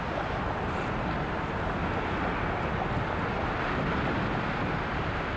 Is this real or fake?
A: real